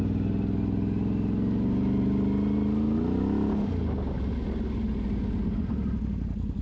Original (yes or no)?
yes